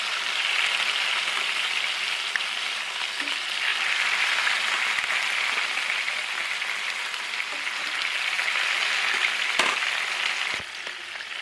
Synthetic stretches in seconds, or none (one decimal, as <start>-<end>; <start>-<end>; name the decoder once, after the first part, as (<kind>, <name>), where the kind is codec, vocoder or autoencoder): none

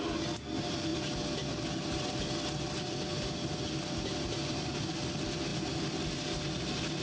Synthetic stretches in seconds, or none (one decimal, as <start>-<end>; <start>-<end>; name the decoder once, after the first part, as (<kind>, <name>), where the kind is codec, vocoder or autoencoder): none

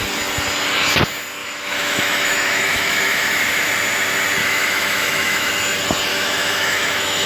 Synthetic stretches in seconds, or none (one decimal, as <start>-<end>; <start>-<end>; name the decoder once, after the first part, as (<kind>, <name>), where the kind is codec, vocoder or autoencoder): 1.4-3.7 (autoencoder, DAC-VAE); 4.4-5.5; 6.1-7.3

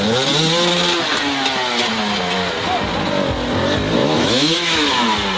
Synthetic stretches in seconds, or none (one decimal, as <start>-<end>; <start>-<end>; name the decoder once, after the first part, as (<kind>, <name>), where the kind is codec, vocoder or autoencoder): 4.0-4.9 (autoencoder, DAC-VAE)